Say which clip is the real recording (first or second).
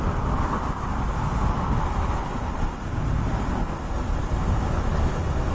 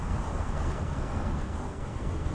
first